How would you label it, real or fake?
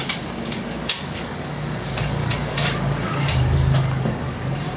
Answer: fake